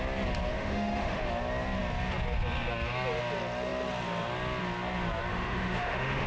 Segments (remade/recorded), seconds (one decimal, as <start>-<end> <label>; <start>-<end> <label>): 0.0-0.5 recorded; 0.5-1.3 remade; 1.3-5.3 recorded; 5.3-6.3 remade